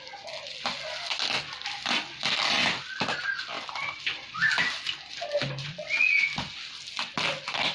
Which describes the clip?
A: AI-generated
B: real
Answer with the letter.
B